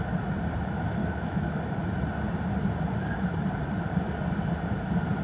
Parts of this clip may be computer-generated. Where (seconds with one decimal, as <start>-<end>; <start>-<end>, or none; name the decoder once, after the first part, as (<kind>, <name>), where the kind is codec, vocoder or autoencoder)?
1.0-1.6 (autoencoder, DAC-VAE)